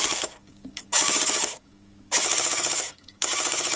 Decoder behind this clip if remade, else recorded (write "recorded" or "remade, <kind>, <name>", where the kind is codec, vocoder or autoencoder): remade, codec, DAC